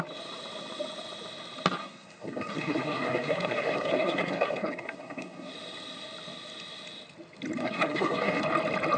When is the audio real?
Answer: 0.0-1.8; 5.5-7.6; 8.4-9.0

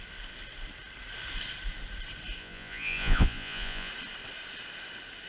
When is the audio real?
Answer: 0.0-2.4; 3.9-5.3

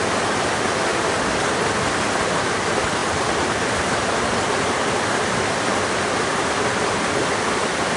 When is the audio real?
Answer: 0.0-8.0

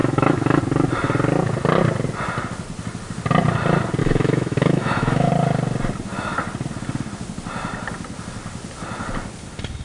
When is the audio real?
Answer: 0.6-4.0; 5.3-9.8

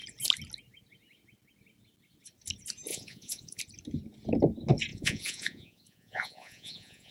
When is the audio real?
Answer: 0.0-2.9; 3.6-4.9